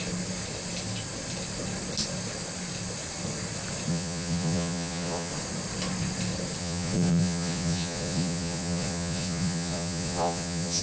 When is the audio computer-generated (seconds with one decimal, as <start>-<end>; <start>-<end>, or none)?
3.9-5.3; 6.6-10.8